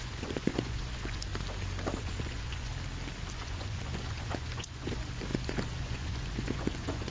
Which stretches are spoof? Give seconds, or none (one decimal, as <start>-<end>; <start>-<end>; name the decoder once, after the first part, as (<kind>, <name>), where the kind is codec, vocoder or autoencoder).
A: 0.0-1.3 (vocoder, Vocos); 2.0-2.7; 3.3-7.1